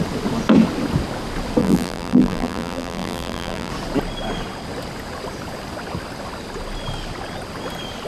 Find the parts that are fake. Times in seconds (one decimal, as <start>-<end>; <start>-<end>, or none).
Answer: 1.6-3.7